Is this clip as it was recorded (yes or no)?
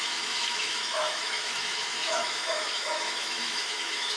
no